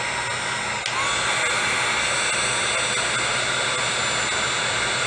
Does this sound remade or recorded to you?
recorded